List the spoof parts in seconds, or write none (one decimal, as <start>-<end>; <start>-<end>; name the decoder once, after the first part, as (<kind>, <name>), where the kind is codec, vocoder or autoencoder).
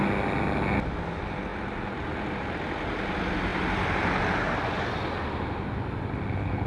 none